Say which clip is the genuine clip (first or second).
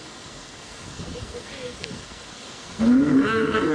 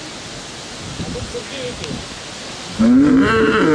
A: second